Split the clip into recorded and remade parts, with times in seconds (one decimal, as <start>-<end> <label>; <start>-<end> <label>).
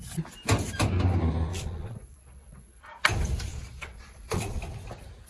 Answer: 0.0-1.5 recorded; 1.5-2.8 remade; 2.8-3.5 recorded; 3.5-4.6 remade; 4.6-5.3 recorded